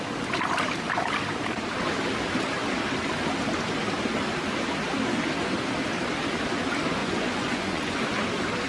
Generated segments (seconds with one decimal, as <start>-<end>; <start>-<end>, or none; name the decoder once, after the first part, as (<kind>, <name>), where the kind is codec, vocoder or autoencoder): 7.0-8.0 (vocoder, Vocos)